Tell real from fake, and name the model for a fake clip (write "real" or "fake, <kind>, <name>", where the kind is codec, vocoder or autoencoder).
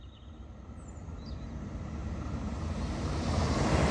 real